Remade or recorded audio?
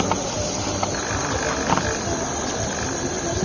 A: recorded